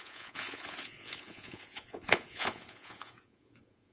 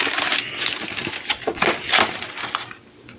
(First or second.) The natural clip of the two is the second